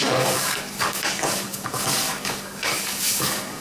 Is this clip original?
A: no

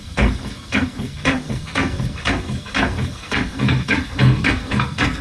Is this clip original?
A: no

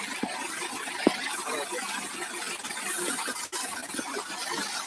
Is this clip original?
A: yes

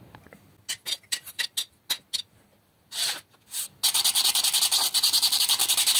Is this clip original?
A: yes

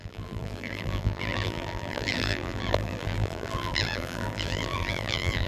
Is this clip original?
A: no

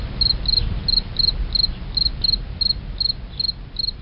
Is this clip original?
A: yes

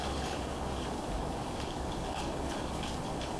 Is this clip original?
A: no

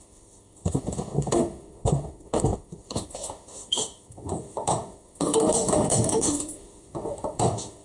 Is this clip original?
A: no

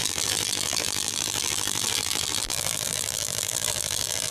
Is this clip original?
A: no